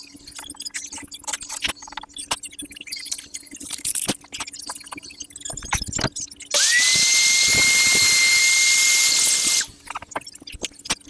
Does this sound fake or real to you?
real